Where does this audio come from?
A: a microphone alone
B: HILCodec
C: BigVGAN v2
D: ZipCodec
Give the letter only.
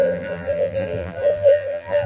C